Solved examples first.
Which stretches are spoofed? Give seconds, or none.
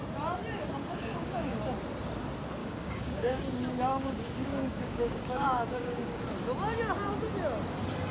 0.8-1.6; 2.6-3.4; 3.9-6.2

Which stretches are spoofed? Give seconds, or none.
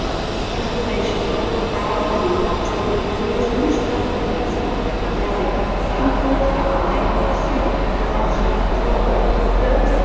8.1-8.7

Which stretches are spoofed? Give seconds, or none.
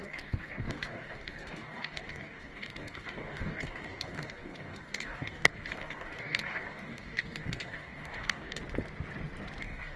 0.0-8.6; 9.6-10.0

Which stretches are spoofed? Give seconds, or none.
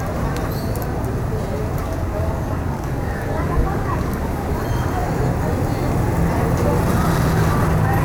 1.8-4.5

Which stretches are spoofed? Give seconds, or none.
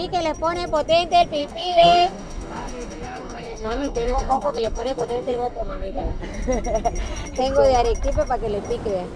1.4-6.2